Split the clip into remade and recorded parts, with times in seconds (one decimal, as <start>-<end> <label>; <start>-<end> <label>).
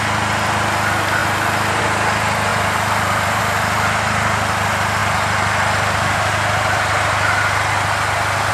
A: 0.0-1.2 recorded; 1.2-1.8 remade; 1.8-2.5 recorded; 2.5-3.4 remade; 3.4-8.5 recorded